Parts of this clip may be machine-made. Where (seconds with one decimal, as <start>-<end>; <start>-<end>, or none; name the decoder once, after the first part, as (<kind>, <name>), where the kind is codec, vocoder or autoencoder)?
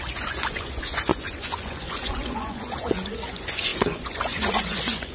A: 0.0-5.1 (vocoder, Vocos)